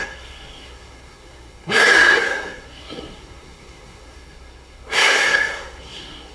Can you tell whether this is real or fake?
fake